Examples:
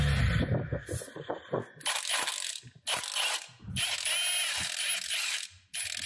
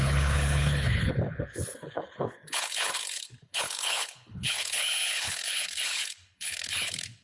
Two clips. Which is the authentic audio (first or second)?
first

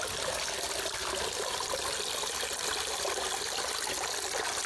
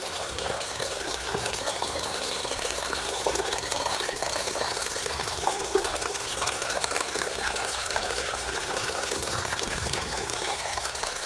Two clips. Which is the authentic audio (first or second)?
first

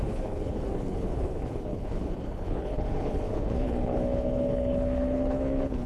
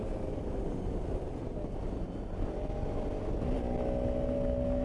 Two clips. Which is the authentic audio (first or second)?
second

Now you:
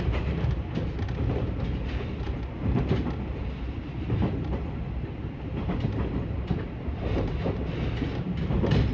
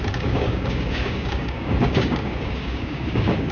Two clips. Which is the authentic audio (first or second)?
first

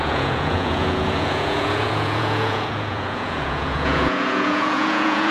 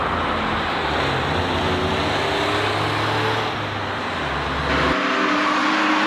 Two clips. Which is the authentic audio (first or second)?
second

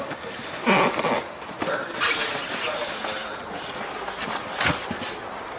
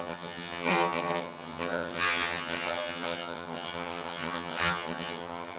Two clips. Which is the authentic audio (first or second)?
first